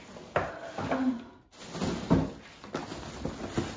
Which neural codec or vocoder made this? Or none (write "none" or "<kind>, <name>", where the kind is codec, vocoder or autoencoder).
none